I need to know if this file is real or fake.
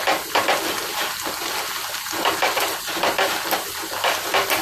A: real